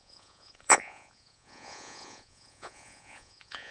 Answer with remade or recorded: remade